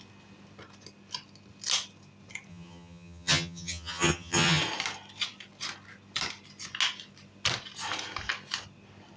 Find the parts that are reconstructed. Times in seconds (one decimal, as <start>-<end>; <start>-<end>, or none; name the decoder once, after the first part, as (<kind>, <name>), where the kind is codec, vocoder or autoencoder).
2.5-4.6 (vocoder, HiFi-GAN)